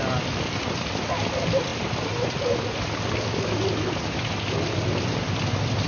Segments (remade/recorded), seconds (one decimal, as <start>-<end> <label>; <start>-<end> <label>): 0.0-5.9 recorded